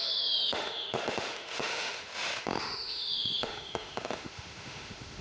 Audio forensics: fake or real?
fake